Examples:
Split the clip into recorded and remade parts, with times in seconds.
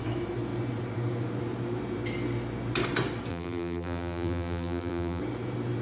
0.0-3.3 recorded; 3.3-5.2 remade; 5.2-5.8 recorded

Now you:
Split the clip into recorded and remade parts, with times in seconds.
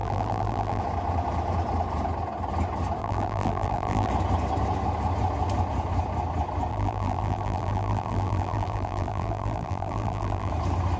0.0-0.8 remade; 0.8-3.0 recorded; 3.0-4.1 remade; 4.1-6.7 recorded; 6.7-10.5 remade; 10.5-11.0 recorded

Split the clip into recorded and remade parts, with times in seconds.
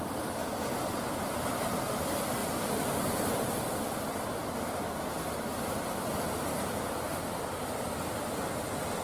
0.0-0.4 remade; 0.4-2.0 recorded; 2.0-2.4 remade; 2.4-7.2 recorded; 7.2-9.0 remade